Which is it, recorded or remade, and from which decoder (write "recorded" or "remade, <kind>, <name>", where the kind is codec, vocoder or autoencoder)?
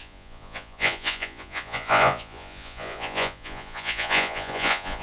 remade, vocoder, Vocos